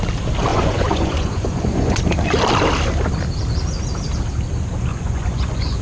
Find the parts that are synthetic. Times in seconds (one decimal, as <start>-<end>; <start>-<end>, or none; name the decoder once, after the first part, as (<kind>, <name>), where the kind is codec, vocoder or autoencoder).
0.5-2.0 (vocoder, Vocos); 4.9-5.8